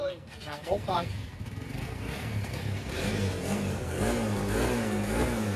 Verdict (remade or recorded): remade